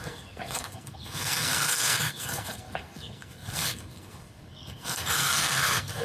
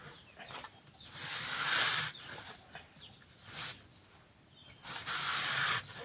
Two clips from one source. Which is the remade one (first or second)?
first